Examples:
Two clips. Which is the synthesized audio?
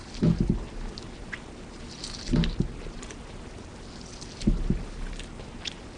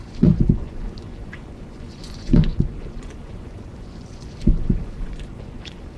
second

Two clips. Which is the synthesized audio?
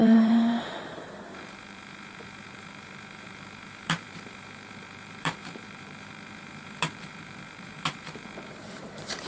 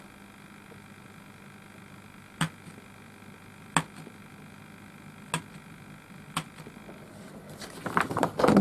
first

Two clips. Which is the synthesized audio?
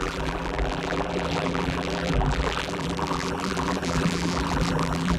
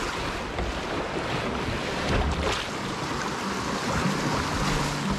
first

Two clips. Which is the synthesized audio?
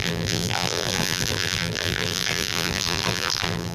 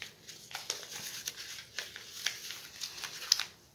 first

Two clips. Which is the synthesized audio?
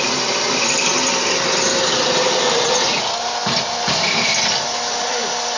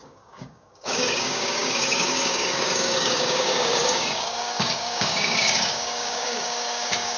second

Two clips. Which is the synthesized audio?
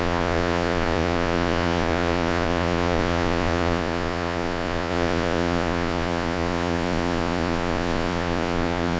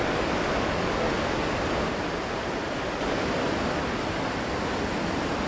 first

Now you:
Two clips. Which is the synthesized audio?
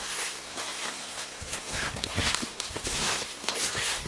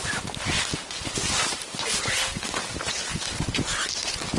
first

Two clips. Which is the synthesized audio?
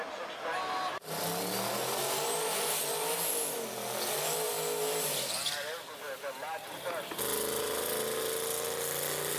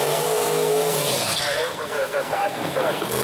second